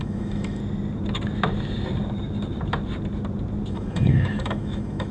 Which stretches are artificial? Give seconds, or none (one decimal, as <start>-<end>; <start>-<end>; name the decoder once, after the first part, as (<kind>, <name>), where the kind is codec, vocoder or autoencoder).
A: 0.0-0.6 (autoencoder, DAC-VAE); 3.7-5.1